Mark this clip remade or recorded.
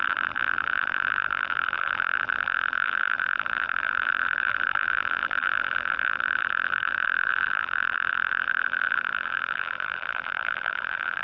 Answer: remade